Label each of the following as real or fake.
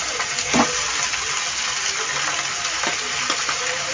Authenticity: real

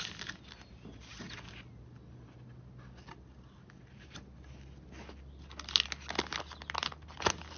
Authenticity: real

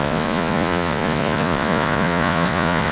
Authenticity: fake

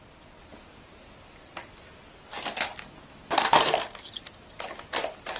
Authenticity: real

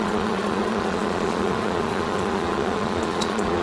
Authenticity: fake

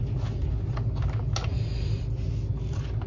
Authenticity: real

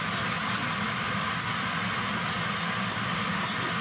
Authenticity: real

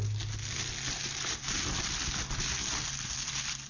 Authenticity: real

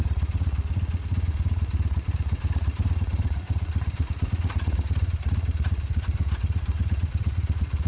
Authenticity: fake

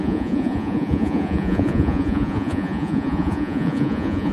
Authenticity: fake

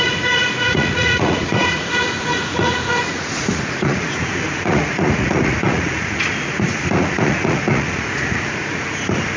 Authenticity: fake